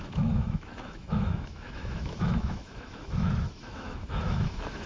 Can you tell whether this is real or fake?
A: fake